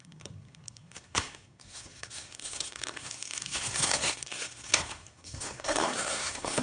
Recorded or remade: remade